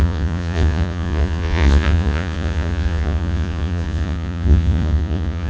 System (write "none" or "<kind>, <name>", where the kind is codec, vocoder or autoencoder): vocoder, Vocos